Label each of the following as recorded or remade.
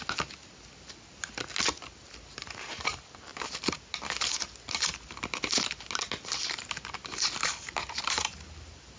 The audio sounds recorded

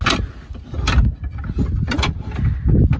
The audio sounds recorded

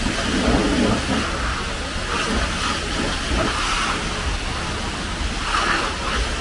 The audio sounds recorded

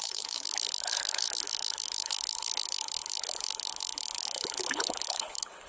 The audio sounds remade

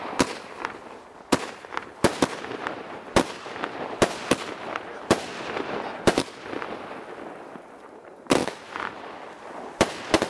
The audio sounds recorded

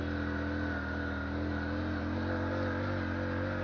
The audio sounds recorded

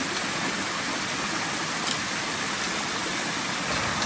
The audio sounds recorded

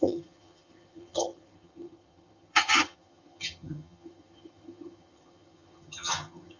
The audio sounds remade